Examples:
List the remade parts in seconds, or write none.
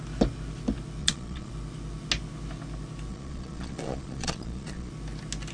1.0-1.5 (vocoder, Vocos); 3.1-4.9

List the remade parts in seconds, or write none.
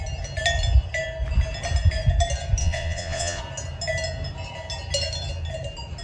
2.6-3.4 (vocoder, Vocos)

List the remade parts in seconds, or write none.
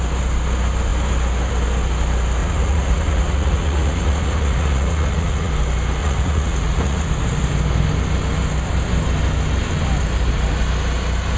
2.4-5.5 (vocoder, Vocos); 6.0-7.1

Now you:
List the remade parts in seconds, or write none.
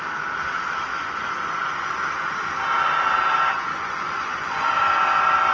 0.9-1.9 (vocoder, Vocos); 3.5-4.7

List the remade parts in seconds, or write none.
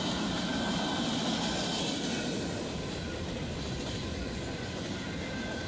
4.0-4.9 (vocoder, Vocos)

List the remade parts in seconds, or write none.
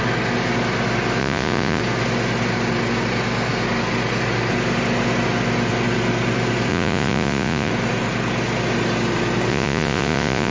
1.2-1.8 (vocoder, Vocos); 6.7-7.7; 9.5-10.5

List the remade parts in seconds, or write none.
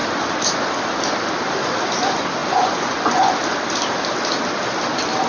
2.4-3.3 (vocoder, Vocos)